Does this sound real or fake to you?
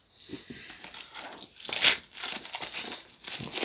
real